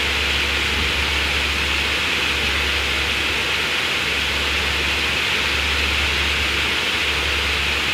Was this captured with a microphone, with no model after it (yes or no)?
yes